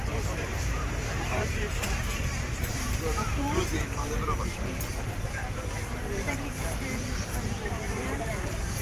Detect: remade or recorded remade